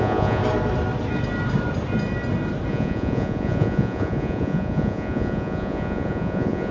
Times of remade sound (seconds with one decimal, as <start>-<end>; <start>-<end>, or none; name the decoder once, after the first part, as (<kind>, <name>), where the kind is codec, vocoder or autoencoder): 0.0-0.4 (vocoder, Vocos); 2.7-6.7